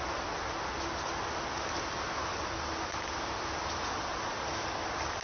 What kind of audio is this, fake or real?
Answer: real